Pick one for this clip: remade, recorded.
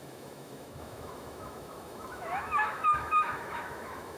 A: remade